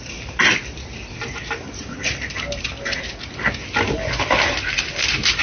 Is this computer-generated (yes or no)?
no